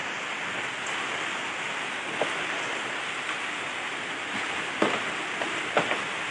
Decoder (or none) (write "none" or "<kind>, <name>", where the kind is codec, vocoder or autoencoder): none